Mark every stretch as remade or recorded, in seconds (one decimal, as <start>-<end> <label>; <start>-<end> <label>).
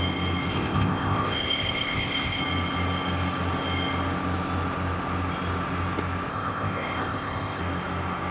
0.0-0.5 recorded; 0.5-2.4 remade; 2.4-6.3 recorded; 6.3-7.6 remade; 7.6-8.3 recorded